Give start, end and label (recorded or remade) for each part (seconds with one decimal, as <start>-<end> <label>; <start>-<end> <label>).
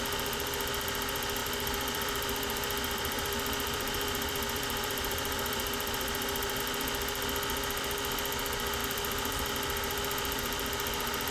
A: 0.0-1.4 recorded; 1.4-6.6 remade; 6.6-8.8 recorded; 8.8-9.5 remade; 9.5-11.3 recorded